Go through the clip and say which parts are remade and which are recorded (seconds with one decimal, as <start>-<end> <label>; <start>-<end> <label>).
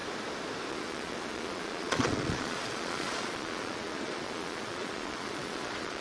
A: 0.0-0.7 recorded; 0.7-6.0 remade